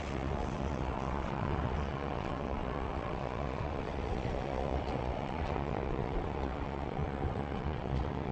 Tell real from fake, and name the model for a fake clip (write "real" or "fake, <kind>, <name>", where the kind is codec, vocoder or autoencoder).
fake, vocoder, WaveNeXt